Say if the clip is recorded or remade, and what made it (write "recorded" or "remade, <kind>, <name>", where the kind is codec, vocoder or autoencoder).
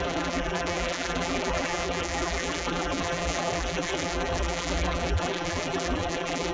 remade, vocoder, BigVGAN v2